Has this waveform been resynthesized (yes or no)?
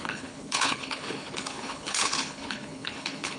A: yes